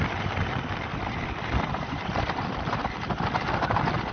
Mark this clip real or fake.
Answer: real